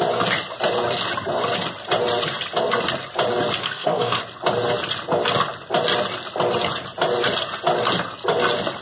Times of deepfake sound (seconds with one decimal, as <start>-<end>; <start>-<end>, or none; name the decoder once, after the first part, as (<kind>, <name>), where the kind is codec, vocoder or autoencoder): 3.6-4.2 (codec, SNAC)